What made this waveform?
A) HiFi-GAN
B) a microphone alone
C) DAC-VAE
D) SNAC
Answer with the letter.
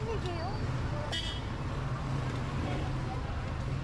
B